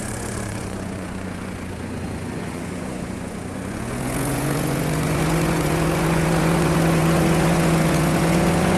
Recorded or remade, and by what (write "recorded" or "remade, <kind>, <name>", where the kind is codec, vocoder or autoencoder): remade, vocoder, Vocos